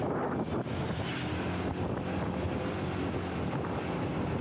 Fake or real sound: real